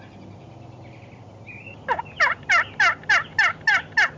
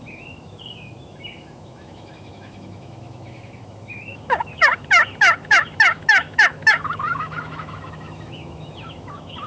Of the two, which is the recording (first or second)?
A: first